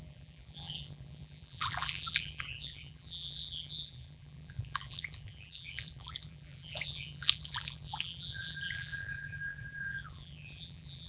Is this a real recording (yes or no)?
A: no